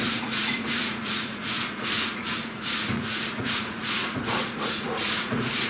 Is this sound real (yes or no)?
no